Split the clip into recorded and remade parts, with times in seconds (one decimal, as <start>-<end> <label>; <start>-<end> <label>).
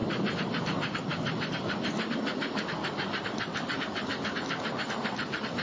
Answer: 0.0-5.6 recorded